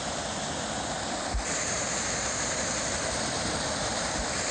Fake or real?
real